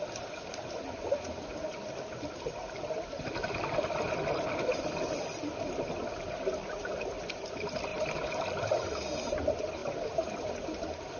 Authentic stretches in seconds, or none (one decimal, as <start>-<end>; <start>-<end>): 0.0-11.2